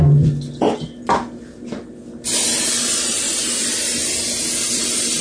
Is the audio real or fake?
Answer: real